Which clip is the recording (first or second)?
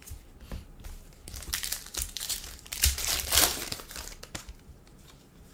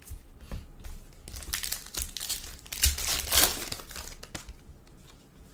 second